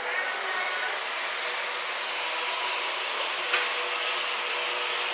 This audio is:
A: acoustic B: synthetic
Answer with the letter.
A